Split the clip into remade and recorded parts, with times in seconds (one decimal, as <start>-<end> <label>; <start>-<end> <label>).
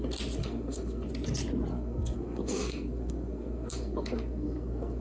0.0-0.4 recorded; 0.4-1.1 remade; 1.1-1.7 recorded; 1.7-5.0 remade